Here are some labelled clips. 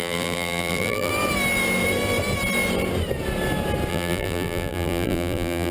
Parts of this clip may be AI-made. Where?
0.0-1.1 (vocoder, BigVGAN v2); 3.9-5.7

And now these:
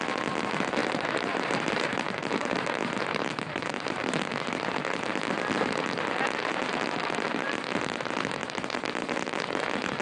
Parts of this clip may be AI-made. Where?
0.8-4.2 (vocoder, BigVGAN v2); 8.4-9.6

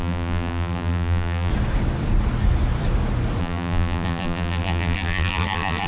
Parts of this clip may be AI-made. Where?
0.0-1.5 (vocoder, BigVGAN v2); 3.4-5.9

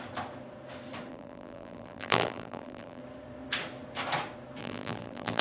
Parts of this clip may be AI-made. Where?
1.1-3.0 (vocoder, BigVGAN v2); 4.6-5.4

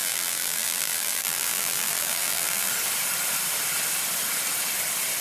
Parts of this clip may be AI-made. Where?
0.0-2.7 (vocoder, BigVGAN v2)

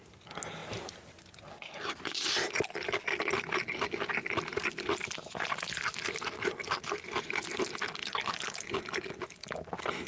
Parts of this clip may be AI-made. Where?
none

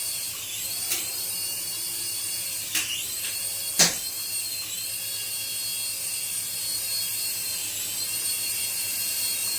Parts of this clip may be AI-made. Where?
0.0-3.6 (vocoder, BigVGAN v2); 6.0-7.6; 8.7-9.6

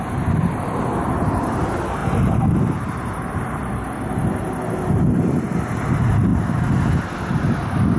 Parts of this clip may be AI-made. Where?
2.0-3.7 (vocoder, BigVGAN v2); 6.3-6.9